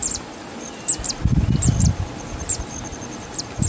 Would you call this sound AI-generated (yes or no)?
yes